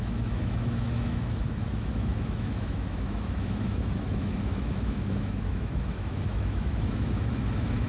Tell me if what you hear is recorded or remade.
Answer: remade